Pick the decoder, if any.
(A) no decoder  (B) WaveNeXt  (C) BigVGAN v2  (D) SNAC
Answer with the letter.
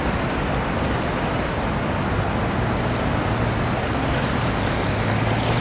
A